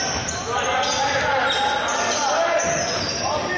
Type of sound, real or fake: real